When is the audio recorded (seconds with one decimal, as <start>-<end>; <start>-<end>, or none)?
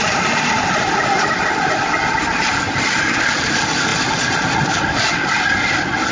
0.0-6.1